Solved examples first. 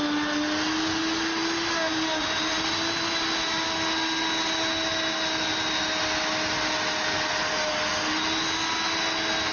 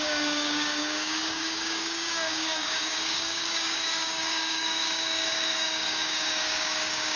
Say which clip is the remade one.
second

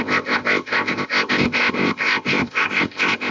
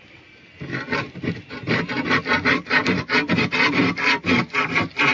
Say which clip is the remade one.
first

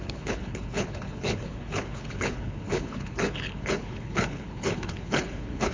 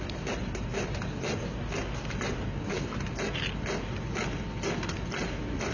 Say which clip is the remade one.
first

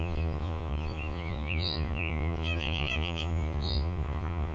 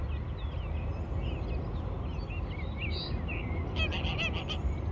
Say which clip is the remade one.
first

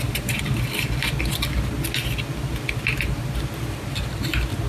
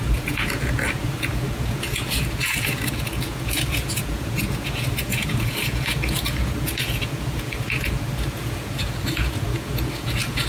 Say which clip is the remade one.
second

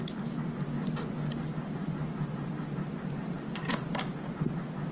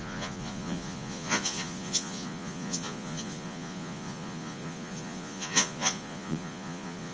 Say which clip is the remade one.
second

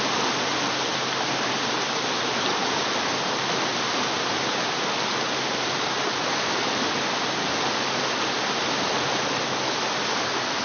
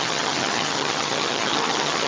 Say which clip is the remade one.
second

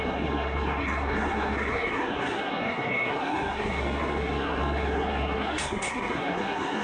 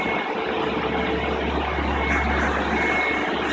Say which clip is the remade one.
first